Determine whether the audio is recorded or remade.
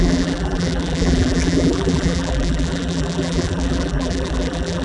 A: remade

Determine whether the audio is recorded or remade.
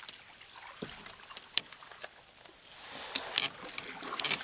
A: remade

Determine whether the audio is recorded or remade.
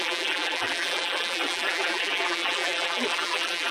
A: remade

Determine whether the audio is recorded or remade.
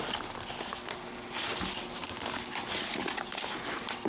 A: recorded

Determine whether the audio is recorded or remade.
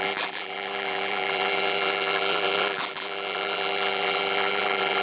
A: remade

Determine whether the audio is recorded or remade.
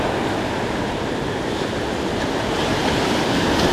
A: recorded